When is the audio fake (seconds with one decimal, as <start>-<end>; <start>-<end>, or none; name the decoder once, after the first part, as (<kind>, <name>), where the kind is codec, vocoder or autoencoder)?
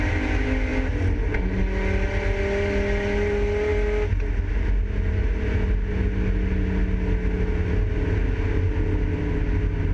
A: none